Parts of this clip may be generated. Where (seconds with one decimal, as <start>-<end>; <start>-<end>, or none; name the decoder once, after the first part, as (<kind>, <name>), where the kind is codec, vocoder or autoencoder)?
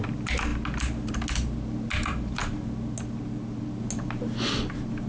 none